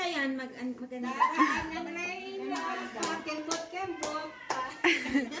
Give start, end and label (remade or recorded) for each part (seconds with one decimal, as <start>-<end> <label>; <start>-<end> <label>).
0.0-5.4 recorded